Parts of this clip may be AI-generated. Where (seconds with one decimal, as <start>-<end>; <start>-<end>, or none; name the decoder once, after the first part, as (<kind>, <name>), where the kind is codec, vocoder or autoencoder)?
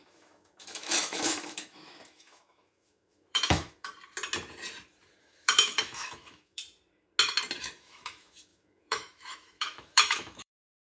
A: 0.0-3.9 (autoencoder, DAC-VAE); 5.2-6.6; 7.6-10.9